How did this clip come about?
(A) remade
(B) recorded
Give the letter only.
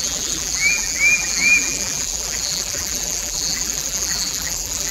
A